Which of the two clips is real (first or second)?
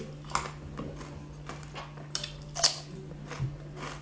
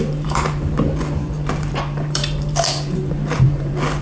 first